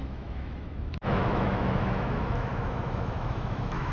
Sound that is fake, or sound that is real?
fake